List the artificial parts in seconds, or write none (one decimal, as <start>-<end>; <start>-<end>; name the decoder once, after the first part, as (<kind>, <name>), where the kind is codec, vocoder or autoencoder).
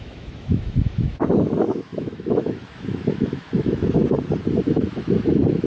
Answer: 0.0-4.0 (autoencoder, DAC-VAE); 4.6-5.7